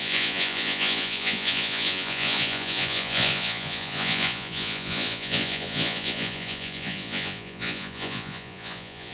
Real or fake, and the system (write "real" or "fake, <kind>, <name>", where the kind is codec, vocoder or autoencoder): fake, vocoder, Vocos